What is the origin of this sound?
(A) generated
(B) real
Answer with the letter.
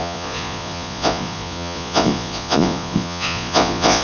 A